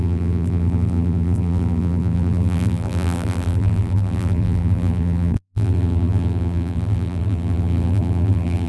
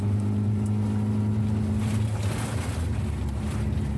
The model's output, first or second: first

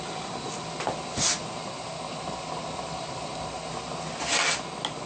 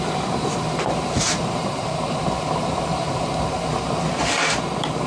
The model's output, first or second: second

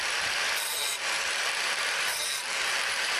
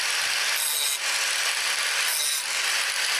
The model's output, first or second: first